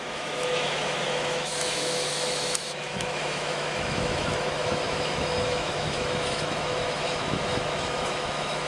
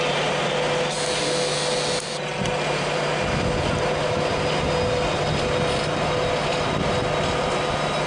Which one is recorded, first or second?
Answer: second